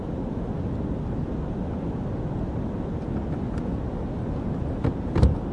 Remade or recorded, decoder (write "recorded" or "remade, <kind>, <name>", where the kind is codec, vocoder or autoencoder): recorded